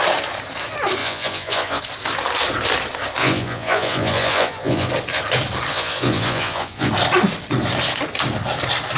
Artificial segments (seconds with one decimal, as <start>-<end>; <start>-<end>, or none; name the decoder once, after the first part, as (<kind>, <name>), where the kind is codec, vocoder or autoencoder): 1.0-1.8 (vocoder, Vocos); 3.2-4.9; 5.7-6.9